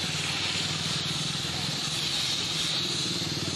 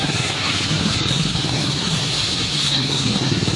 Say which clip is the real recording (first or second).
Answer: first